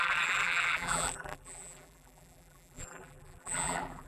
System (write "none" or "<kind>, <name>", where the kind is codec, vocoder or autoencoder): vocoder, BigVGAN v2